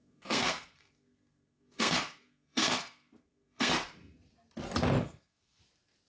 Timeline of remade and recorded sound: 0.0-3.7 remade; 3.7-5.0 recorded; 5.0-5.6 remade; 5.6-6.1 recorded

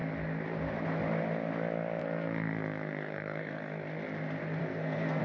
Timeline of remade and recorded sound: 0.0-2.0 recorded; 2.0-3.6 remade; 3.6-4.6 recorded; 4.6-5.2 remade

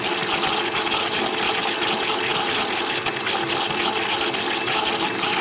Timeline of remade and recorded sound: 0.0-5.4 recorded

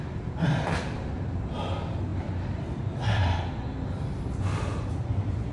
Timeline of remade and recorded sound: 0.0-5.5 recorded

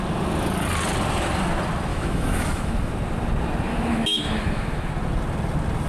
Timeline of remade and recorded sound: 0.0-1.9 recorded; 1.9-2.9 remade; 2.9-3.7 recorded; 3.7-4.9 remade; 4.9-5.9 recorded

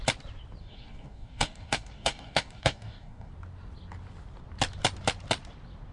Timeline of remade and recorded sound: 0.0-0.6 recorded; 0.6-3.3 remade; 3.3-5.9 recorded

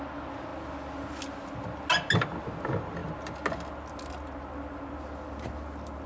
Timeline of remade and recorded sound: 0.0-6.1 recorded

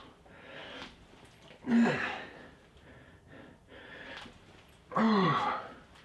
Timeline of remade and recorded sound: 0.0-6.0 recorded